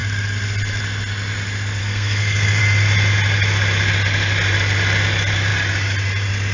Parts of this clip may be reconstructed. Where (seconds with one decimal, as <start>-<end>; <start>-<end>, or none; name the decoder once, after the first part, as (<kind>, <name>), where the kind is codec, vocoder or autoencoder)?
1.8-2.6 (codec, SNAC)